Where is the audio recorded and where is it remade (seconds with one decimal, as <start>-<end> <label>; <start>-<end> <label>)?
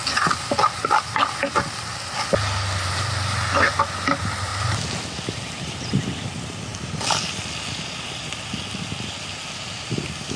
0.0-10.4 recorded